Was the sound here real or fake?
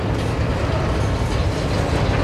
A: real